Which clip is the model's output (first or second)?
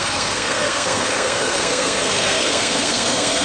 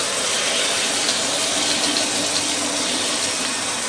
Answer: first